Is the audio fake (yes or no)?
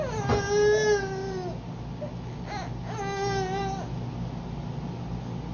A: no